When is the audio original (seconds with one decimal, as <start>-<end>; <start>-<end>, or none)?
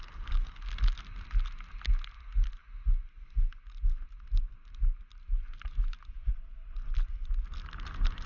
0.0-6.3; 7.1-8.3